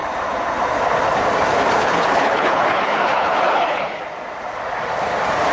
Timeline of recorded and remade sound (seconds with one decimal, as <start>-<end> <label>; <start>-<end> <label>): 0.0-1.8 recorded; 1.8-4.0 remade; 4.0-5.5 recorded

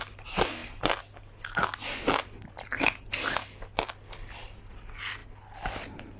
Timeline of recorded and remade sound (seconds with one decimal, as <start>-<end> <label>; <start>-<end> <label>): 0.0-6.2 recorded

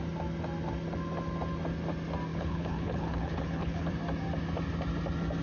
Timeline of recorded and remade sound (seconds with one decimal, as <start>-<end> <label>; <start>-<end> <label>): 0.0-2.3 recorded; 2.3-3.9 remade; 3.9-5.4 recorded

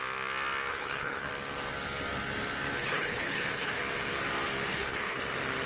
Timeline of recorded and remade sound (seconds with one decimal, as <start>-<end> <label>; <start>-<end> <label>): 0.0-0.7 recorded; 0.7-1.3 remade; 1.3-2.8 recorded; 2.8-3.8 remade; 3.8-4.7 recorded; 4.7-5.2 remade; 5.2-5.7 recorded

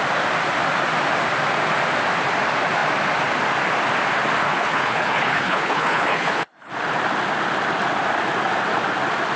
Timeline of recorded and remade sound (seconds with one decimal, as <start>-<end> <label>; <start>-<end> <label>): 0.0-4.4 recorded; 4.4-6.7 remade; 6.7-9.4 recorded

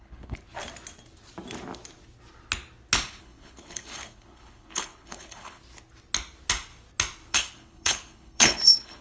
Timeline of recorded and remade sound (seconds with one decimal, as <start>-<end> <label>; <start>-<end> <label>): 0.0-0.4 remade; 0.4-3.2 recorded; 3.2-5.6 remade; 5.6-7.3 recorded; 7.3-9.0 remade

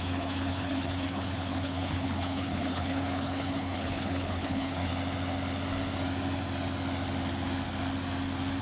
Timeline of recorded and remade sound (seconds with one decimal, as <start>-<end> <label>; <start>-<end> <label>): 0.0-4.9 remade; 4.9-8.6 recorded

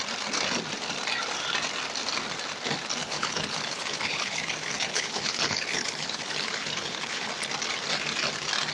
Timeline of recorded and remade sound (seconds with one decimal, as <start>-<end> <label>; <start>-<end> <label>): 0.0-3.0 recorded; 3.0-7.3 remade; 7.3-8.7 recorded